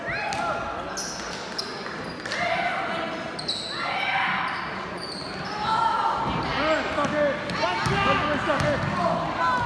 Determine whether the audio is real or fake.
real